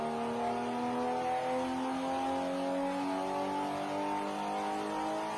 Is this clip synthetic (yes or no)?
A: no